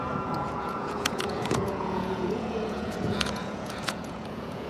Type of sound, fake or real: fake